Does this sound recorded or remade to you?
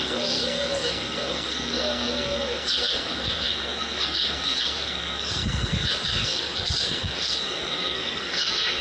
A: remade